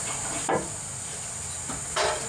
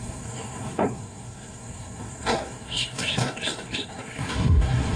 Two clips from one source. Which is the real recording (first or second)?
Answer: first